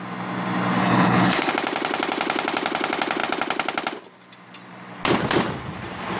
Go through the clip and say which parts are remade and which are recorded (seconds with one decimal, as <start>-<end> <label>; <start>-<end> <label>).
0.0-0.8 recorded; 0.8-1.5 remade; 1.5-6.2 recorded